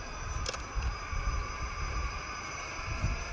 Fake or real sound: real